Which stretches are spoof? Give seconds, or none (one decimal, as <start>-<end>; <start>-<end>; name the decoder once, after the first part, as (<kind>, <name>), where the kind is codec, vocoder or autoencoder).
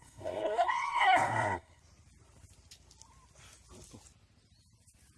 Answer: 0.0-1.8 (codec, SNAC)